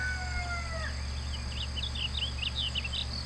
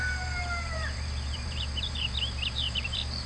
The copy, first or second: second